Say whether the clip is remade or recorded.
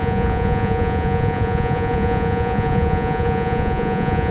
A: remade